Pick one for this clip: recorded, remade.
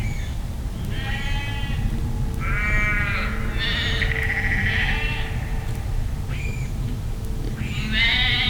recorded